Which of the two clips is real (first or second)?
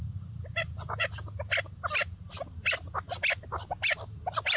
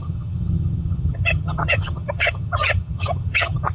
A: first